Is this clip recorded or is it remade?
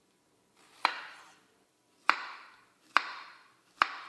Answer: remade